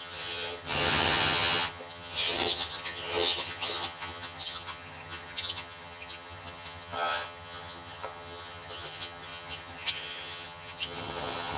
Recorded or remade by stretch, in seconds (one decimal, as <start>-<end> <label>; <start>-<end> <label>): 0.0-11.6 remade